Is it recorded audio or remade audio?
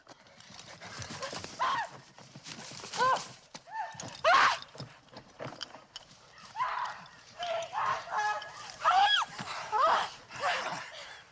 remade